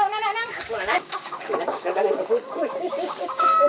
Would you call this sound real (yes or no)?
no